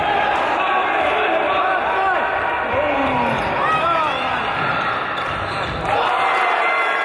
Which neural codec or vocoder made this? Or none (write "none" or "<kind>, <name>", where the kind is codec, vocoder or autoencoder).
none